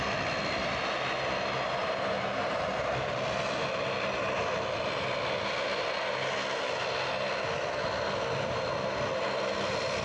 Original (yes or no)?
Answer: yes